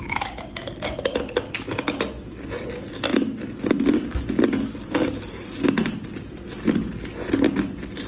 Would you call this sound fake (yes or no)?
no